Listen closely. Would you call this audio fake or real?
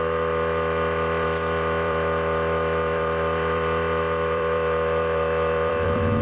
fake